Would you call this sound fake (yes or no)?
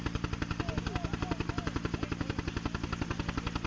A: no